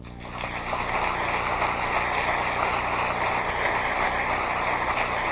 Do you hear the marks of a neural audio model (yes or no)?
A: no